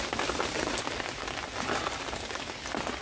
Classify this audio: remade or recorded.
recorded